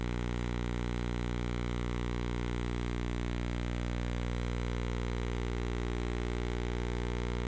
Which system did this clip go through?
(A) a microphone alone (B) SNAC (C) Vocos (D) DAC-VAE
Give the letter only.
A